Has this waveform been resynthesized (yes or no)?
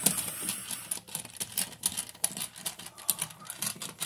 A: no